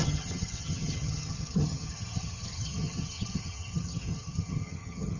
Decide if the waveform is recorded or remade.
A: remade